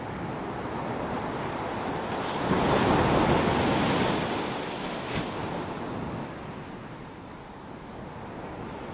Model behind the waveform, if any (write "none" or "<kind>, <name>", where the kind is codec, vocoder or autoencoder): none